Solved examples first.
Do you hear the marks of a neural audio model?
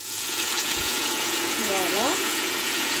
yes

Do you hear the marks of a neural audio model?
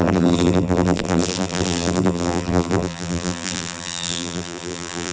yes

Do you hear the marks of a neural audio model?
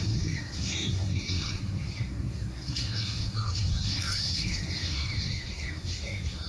yes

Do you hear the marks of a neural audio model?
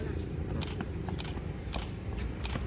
no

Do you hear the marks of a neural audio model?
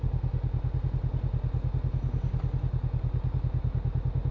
no